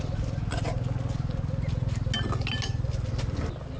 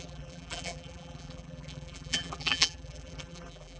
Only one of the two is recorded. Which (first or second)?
first